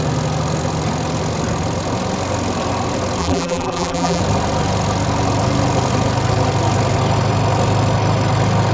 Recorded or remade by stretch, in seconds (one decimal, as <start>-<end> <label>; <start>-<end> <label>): 0.0-3.2 recorded; 3.2-4.2 remade; 4.2-8.7 recorded